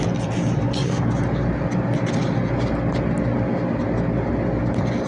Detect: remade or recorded recorded